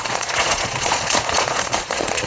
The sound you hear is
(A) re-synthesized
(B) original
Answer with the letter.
A